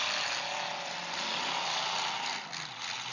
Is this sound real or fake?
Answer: real